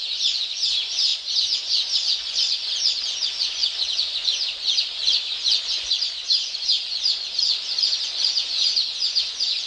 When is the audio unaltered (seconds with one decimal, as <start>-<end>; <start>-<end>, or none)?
none